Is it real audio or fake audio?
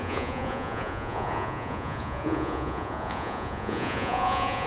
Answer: fake